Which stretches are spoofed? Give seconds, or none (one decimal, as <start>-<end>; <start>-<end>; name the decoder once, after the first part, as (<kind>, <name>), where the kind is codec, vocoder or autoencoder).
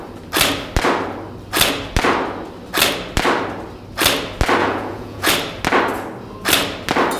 4.6-5.3 (vocoder, Vocos)